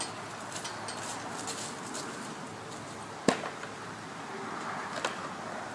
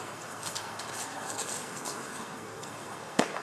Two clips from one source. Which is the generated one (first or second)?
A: second